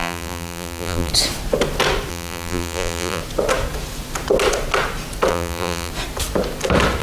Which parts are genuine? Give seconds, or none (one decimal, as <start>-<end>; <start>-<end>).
1.1-2.1; 3.2-5.3; 5.9-7.0